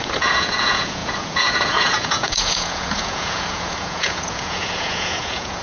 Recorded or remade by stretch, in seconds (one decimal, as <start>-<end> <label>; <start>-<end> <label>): 0.0-5.6 remade